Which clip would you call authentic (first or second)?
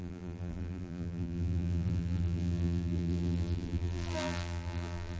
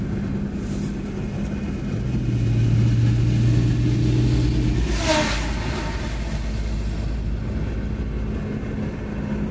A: second